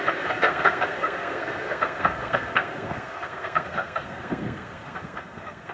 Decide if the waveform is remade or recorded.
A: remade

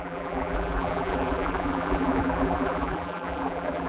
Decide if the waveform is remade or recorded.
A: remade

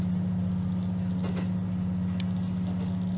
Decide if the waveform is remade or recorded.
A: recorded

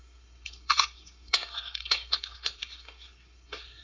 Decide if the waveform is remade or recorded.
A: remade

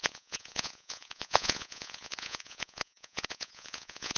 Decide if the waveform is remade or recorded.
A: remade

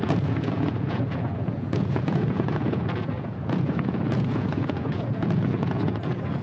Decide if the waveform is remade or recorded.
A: remade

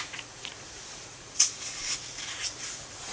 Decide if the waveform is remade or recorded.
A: remade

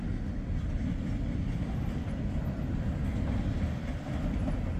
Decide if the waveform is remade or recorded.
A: recorded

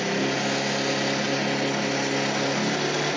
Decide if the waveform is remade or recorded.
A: recorded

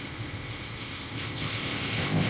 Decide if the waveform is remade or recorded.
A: remade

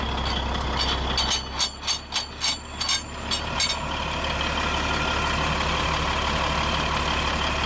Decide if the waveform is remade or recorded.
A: recorded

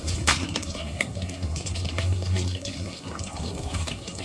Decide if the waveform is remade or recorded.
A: remade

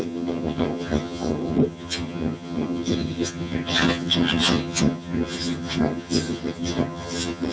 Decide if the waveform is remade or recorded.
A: remade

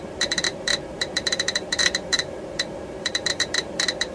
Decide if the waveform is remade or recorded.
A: remade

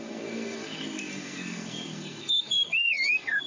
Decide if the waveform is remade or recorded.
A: remade